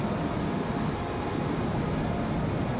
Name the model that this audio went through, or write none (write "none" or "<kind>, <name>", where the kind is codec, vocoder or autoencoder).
none